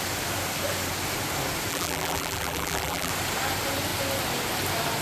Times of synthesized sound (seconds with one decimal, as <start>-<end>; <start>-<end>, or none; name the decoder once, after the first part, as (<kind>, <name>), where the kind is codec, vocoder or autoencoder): 1.7-3.1 (vocoder, BigVGAN v2)